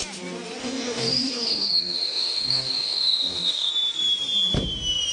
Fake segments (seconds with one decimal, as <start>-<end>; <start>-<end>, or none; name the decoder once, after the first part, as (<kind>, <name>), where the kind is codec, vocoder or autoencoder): 0.6-3.7 (codec, DAC)